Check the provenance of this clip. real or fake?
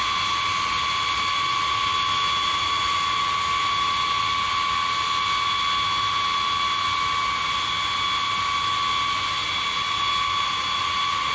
real